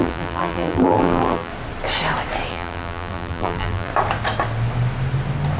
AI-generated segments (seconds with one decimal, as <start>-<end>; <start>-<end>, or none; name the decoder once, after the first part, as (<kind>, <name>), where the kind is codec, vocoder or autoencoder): 0.0-1.5 (vocoder, BigVGAN v2); 2.5-3.9

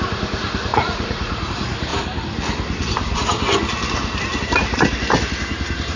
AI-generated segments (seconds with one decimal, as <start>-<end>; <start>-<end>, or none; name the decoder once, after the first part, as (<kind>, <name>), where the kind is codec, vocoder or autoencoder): 0.7-1.5 (vocoder, Vocos)